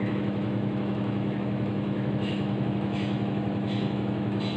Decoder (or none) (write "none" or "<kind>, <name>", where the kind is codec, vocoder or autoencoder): autoencoder, DAC-VAE